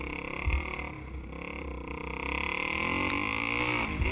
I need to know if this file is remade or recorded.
recorded